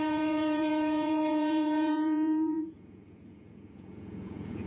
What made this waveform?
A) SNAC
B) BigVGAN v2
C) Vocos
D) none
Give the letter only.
C